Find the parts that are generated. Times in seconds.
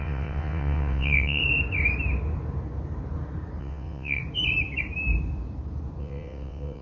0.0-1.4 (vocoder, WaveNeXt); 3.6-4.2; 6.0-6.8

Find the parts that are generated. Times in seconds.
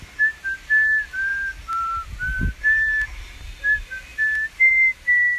none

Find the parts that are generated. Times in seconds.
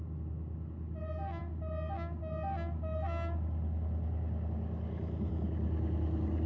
none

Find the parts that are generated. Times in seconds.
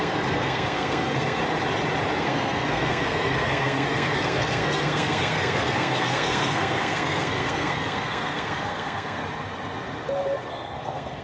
0.0-1.4 (codec, SNAC); 2.2-9.2; 10.5-11.2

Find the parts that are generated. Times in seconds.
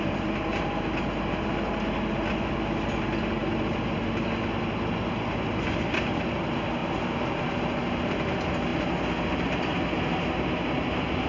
none